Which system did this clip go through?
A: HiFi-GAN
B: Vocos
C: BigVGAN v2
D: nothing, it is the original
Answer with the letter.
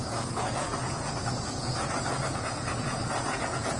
B